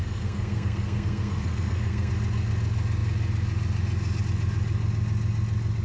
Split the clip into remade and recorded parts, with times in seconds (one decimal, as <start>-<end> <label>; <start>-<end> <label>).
0.0-2.1 remade; 2.1-5.8 recorded